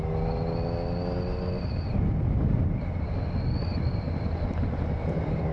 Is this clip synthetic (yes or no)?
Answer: no